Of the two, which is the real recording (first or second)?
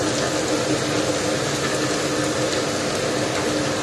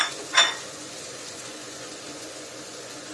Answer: first